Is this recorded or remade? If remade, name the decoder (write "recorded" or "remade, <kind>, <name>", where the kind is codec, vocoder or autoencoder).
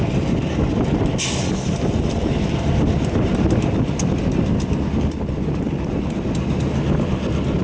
recorded